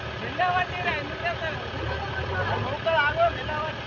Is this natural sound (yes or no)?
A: yes